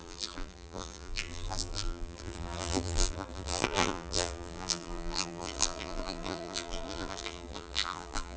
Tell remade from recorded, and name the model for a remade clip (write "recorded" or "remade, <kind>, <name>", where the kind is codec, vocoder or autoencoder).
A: remade, vocoder, BigVGAN v2